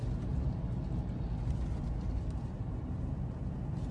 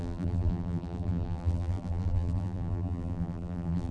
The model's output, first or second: second